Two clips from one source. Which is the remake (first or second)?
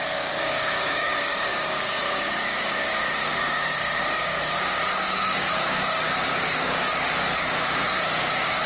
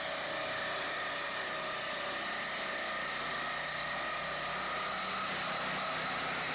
first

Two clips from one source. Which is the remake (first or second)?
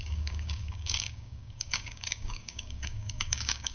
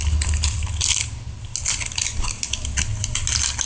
first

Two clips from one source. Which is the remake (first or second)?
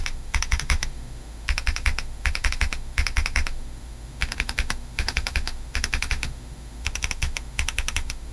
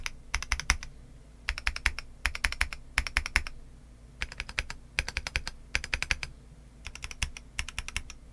first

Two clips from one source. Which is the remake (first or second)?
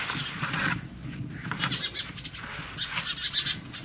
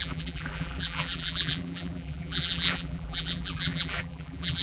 second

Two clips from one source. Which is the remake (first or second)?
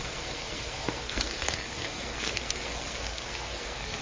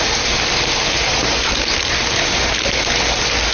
first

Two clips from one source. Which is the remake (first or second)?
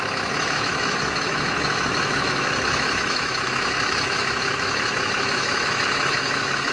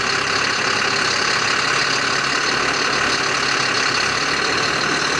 first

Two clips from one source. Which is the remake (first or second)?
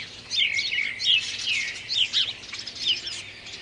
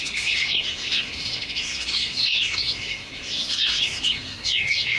second